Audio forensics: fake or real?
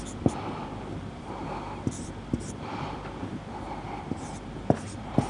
fake